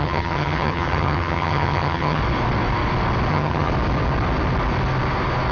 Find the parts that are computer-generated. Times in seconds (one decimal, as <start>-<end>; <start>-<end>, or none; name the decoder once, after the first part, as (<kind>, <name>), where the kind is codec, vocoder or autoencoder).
0.0-2.2 (vocoder, HiFi-GAN); 3.3-3.7